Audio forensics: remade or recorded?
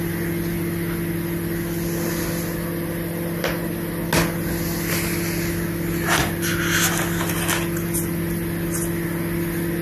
recorded